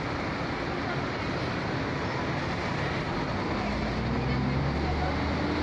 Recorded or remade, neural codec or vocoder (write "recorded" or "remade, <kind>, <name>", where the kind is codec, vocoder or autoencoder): recorded